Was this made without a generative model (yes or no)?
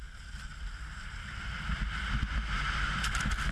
yes